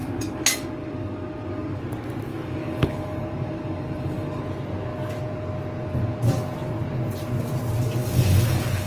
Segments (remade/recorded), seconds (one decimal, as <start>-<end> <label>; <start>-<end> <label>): 0.0-1.8 remade; 1.8-2.3 recorded; 2.3-4.4 remade; 4.4-8.0 recorded; 8.0-8.9 remade